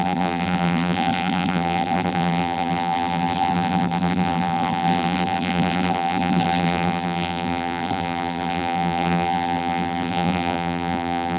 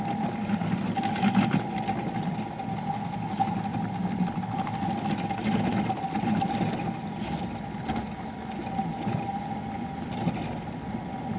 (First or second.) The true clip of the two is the second